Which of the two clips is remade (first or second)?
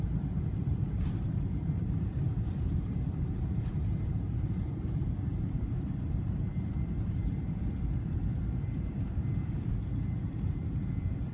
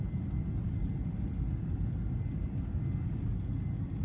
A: first